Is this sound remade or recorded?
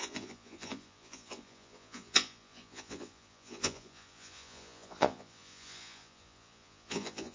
remade